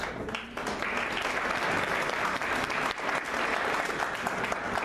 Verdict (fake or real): real